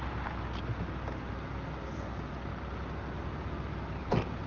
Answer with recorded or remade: recorded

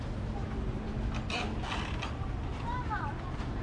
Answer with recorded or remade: recorded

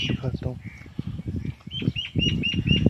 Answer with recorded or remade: recorded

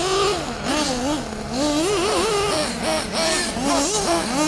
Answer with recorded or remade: recorded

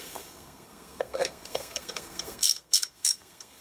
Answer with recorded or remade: remade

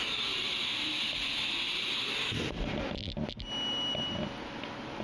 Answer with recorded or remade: recorded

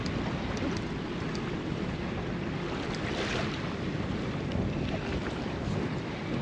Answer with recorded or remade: recorded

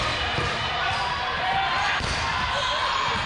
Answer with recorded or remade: recorded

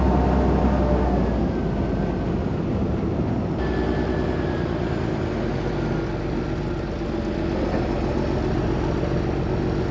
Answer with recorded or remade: recorded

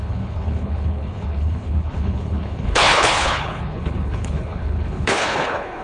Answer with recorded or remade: remade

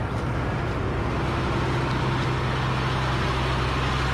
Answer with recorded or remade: recorded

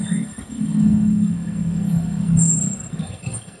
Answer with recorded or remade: remade